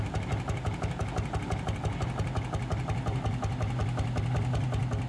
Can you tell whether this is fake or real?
real